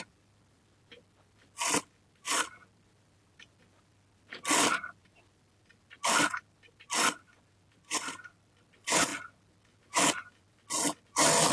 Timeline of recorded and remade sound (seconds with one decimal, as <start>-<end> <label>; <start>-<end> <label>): 0.0-11.5 recorded